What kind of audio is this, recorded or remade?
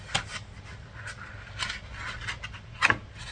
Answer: recorded